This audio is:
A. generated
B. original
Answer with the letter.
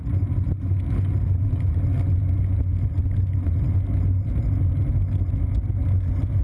B